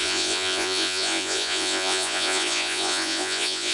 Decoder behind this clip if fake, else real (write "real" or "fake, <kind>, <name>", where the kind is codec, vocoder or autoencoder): fake, vocoder, Vocos